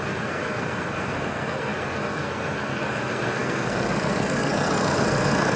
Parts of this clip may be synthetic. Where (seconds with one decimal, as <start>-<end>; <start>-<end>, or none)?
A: 0.0-5.6